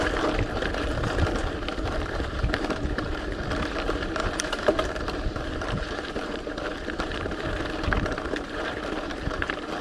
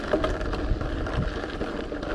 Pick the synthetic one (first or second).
first